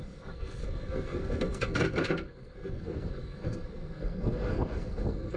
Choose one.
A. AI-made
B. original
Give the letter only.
A